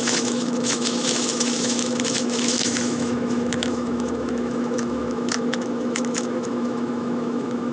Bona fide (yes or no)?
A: no